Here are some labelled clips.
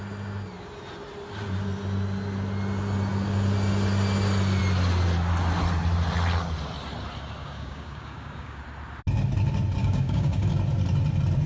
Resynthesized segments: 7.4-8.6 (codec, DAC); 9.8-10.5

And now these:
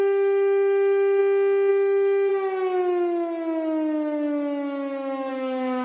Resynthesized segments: 0.0-1.2 (codec, DAC); 1.7-2.3; 5.3-5.8

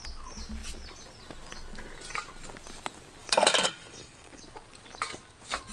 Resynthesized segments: 3.2-4.4 (codec, DAC)

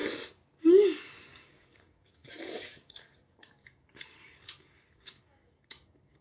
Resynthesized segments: 0.6-6.2 (codec, DAC)